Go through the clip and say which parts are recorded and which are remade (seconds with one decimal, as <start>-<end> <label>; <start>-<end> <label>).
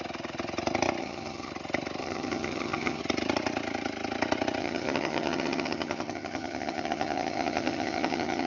0.0-1.0 recorded; 1.0-1.5 remade; 1.5-2.0 recorded; 2.0-3.0 remade; 3.0-4.6 recorded; 4.6-8.5 remade